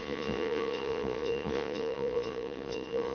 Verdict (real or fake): fake